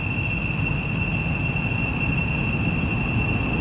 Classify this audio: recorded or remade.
recorded